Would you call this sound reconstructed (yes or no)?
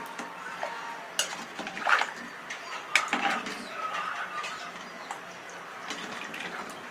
no